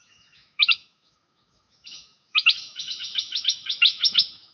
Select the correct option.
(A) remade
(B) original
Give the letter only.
A